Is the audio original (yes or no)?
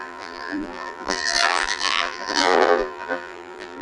no